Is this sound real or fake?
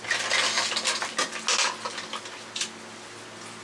real